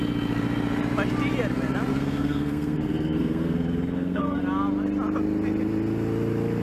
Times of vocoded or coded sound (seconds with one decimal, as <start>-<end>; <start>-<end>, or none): 1.9-4.4